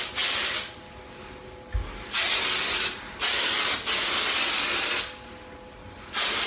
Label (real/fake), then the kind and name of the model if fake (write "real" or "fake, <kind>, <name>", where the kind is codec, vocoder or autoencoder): real